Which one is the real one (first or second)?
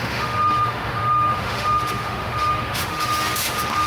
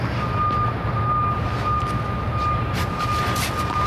second